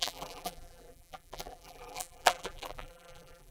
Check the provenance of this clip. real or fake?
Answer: fake